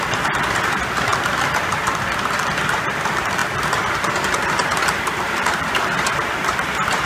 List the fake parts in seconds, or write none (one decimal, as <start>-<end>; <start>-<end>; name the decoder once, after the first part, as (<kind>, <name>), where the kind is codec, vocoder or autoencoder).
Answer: 0.0-1.1 (vocoder, BigVGAN v2); 2.7-7.1